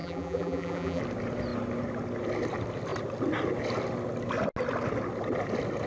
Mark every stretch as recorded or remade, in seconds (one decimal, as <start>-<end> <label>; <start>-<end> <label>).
0.0-1.0 remade; 1.0-5.9 recorded